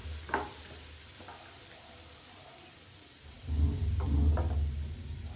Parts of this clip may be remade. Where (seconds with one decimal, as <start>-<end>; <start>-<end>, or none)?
none